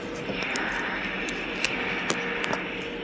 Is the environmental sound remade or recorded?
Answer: recorded